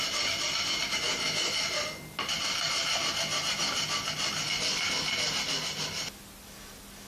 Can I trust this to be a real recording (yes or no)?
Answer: yes